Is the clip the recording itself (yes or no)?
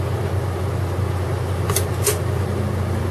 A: yes